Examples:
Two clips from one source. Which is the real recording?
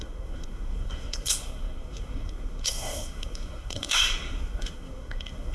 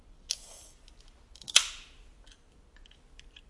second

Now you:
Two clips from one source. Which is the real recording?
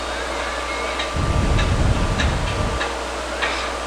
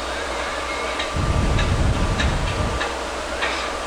first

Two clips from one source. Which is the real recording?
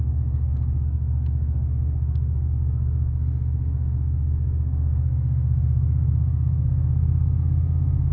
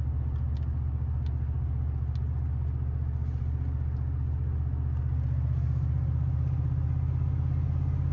second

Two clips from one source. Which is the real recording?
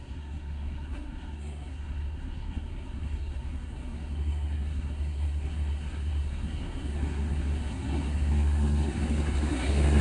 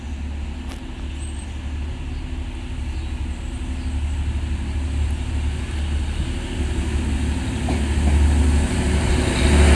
second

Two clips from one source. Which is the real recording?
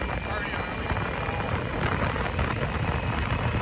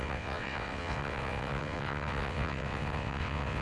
first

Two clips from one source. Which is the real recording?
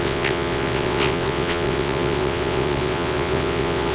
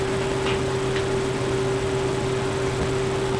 second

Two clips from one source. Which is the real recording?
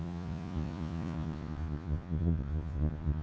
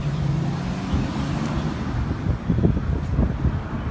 second